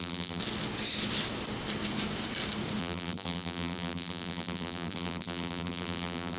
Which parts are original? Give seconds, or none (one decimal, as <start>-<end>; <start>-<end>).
0.4-2.8